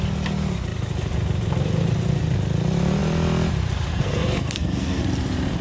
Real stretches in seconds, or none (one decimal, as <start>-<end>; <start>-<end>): 0.0-3.9; 5.0-5.6